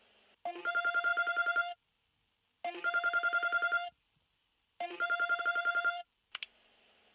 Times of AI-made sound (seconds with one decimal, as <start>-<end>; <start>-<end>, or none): none